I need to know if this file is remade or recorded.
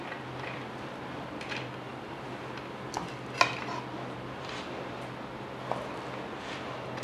recorded